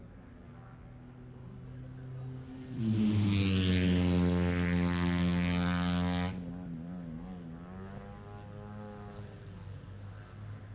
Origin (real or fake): real